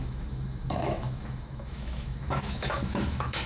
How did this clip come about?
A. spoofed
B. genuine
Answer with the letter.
A